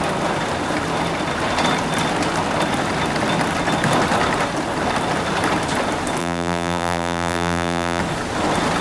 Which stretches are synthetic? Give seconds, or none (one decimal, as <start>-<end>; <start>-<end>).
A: 6.2-8.0